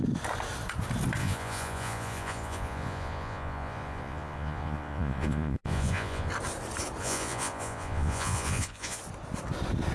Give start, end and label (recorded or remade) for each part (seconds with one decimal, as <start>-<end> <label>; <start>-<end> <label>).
0.0-1.2 recorded; 1.2-6.3 remade; 6.3-7.0 recorded; 7.0-9.0 remade; 9.0-9.9 recorded